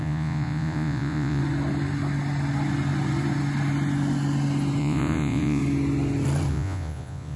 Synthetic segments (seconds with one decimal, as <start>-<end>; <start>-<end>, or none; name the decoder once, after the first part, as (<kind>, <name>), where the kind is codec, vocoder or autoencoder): 0.0-1.4 (vocoder, Vocos); 4.8-5.6; 6.5-7.4